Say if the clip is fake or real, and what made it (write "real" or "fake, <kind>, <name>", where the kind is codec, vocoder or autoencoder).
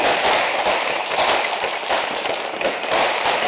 fake, vocoder, BigVGAN v2